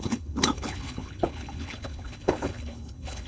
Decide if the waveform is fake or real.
fake